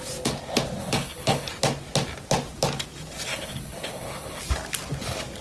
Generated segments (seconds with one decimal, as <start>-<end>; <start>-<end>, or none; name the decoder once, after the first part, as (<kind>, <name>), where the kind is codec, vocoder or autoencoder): 0.8-1.5 (codec, HILCodec); 3.3-4.4